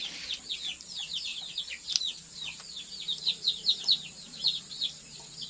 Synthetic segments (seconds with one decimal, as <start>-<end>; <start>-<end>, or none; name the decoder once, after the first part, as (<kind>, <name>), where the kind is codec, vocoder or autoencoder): 0.0-5.5 (vocoder, BigVGAN v2)